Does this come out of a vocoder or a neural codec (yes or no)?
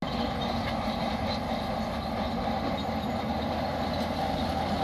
no